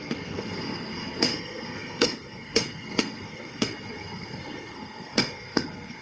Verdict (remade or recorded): remade